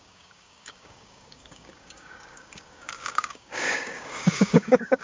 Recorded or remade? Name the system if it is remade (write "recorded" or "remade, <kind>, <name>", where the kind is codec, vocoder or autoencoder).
remade, codec, DAC